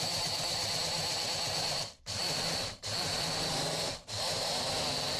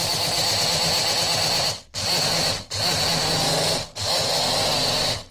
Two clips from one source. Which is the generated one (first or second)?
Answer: first